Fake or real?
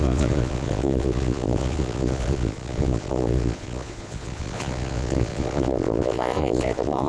fake